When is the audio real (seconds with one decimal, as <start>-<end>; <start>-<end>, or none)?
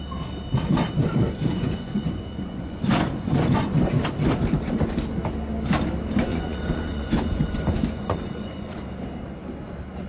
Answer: 0.0-1.5; 4.0-6.3; 8.8-10.1